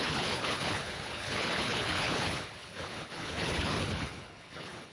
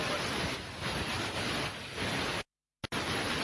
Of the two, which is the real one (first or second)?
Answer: second